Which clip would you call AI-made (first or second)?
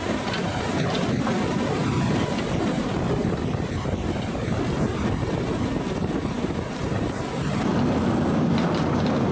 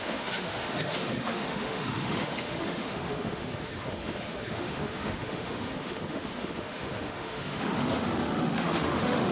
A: second